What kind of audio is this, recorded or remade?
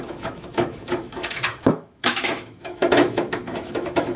remade